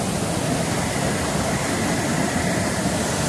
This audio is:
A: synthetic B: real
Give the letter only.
B